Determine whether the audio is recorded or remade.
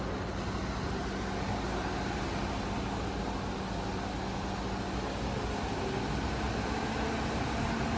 recorded